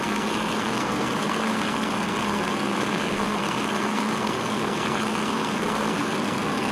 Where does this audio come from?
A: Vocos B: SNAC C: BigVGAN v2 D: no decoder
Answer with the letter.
B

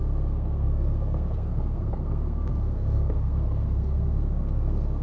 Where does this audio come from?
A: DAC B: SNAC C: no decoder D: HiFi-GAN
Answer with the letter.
B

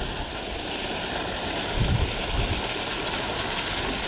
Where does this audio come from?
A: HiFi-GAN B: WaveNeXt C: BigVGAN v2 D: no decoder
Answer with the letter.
D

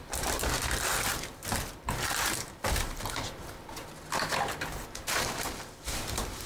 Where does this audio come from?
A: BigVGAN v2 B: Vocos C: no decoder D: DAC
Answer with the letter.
C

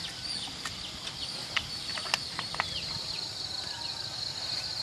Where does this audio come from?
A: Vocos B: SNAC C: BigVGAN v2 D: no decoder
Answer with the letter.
D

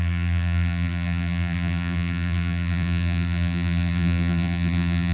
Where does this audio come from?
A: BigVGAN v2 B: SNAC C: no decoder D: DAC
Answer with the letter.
A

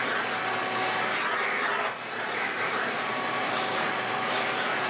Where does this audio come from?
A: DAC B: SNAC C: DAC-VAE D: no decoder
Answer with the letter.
D